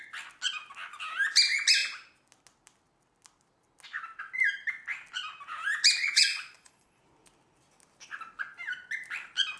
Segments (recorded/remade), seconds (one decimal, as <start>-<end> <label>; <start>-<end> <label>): 0.0-6.0 recorded; 6.0-7.0 remade; 7.0-9.6 recorded